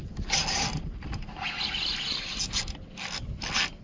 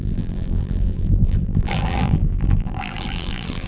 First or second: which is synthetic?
second